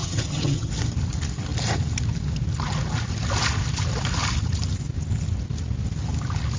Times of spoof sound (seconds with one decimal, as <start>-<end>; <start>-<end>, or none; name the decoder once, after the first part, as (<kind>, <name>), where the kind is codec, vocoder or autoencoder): 0.0-0.7 (vocoder, HiFi-GAN)